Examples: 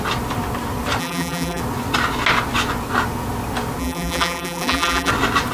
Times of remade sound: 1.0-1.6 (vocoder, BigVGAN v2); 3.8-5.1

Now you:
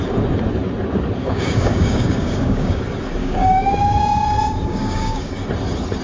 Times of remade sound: 1.2-2.8 (codec, DAC); 3.2-5.3

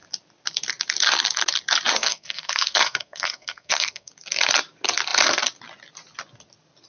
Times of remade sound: 2.0-4.1 (codec, SNAC)

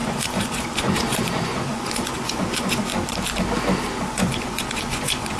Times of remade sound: 0.0-2.9 (vocoder, Vocos); 4.1-5.4

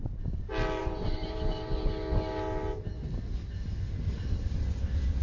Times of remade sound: 0.8-1.8 (vocoder, BigVGAN v2)

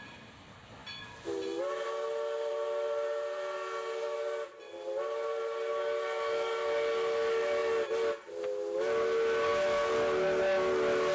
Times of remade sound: none

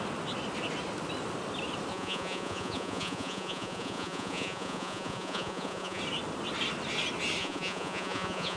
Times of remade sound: 1.9-6.0 (vocoder, Vocos); 7.4-8.6

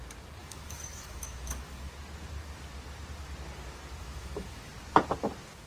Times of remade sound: 0.4-1.9 (autoencoder, DAC-VAE); 4.0-4.7